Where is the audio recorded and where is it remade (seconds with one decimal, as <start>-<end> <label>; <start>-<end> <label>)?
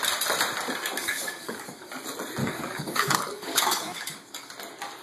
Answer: 0.0-1.0 recorded; 1.0-1.9 remade; 1.9-2.4 recorded; 2.4-4.5 remade; 4.5-5.0 recorded